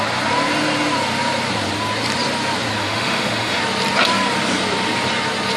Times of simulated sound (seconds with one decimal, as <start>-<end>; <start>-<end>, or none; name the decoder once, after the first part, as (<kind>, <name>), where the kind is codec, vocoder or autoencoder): 2.8-3.6 (autoencoder, DAC-VAE)